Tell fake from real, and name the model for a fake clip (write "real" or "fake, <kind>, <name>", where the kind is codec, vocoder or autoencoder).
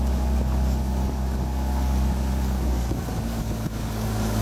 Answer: fake, codec, DAC